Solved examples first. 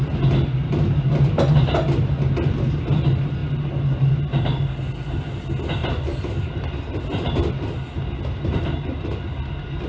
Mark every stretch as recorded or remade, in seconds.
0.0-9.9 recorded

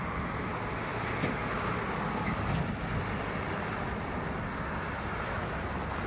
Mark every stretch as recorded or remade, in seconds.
0.0-6.1 recorded

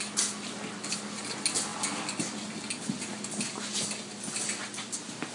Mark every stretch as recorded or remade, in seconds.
0.0-5.3 recorded

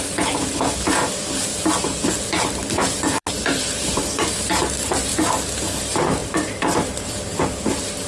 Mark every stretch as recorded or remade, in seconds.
0.0-1.5 remade; 1.5-3.2 recorded; 3.2-8.1 remade

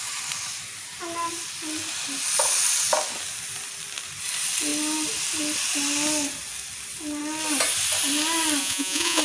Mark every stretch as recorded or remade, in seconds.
0.0-8.6 recorded; 8.6-9.2 remade

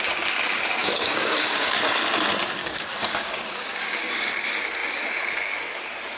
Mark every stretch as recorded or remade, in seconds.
0.0-0.8 recorded; 0.8-1.8 remade; 1.8-2.6 recorded; 2.6-4.1 remade; 4.1-6.2 recorded

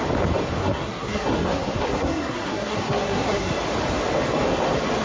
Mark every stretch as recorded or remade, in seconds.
0.0-0.6 recorded; 0.6-3.5 remade; 3.5-5.0 recorded